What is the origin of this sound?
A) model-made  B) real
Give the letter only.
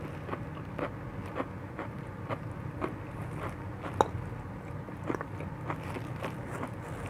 B